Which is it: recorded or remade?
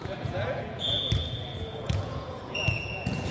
remade